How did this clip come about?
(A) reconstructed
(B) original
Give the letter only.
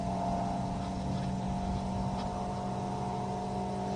B